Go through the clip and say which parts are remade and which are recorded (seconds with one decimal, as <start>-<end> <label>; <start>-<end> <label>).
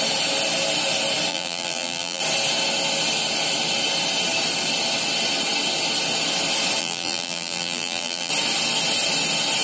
0.0-1.3 recorded; 1.3-2.2 remade; 2.2-6.8 recorded; 6.8-8.3 remade; 8.3-9.6 recorded